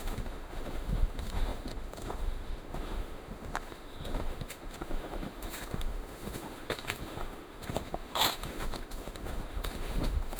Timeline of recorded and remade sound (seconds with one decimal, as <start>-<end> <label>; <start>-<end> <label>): 0.0-10.4 remade